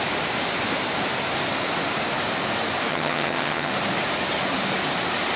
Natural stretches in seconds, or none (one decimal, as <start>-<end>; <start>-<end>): 0.0-2.9; 3.7-5.4